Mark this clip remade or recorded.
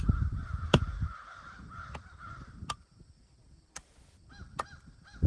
remade